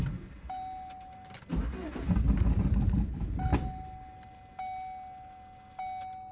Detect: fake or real real